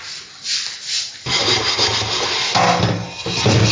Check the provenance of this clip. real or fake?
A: real